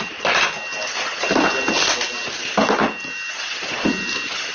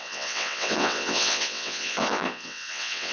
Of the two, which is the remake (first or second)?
second